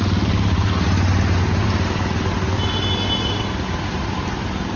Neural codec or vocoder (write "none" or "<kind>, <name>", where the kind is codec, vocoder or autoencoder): none